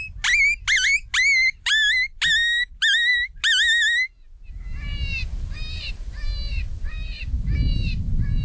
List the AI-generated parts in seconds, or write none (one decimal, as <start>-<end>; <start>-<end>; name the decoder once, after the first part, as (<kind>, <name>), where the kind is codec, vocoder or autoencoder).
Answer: none